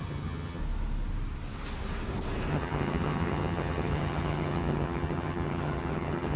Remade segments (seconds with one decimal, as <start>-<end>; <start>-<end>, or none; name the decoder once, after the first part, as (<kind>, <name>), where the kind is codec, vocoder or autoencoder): 0.0-0.6 (vocoder, HiFi-GAN); 2.5-6.4